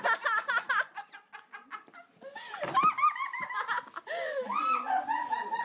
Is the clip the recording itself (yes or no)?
yes